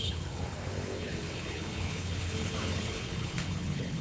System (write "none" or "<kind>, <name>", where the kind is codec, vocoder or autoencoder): codec, HILCodec